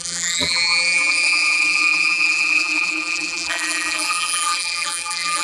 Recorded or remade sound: remade